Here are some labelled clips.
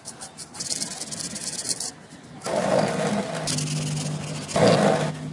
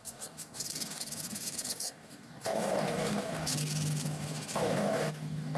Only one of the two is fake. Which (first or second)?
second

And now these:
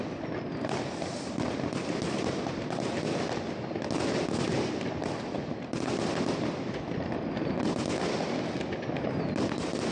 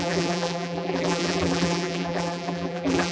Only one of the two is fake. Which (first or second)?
second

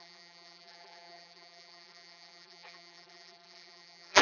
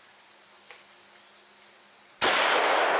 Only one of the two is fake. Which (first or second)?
first